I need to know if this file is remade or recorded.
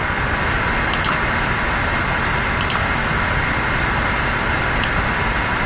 recorded